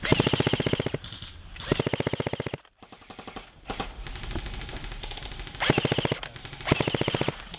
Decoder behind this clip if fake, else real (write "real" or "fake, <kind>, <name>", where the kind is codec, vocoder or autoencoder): real